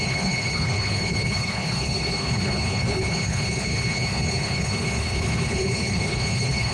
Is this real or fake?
fake